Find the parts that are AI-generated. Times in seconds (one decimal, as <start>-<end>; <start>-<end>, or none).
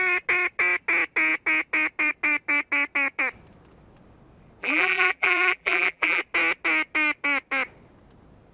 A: 4.6-6.2